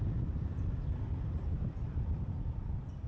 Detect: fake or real real